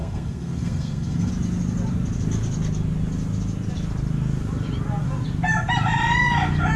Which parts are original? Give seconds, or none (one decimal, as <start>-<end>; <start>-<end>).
1.3-6.8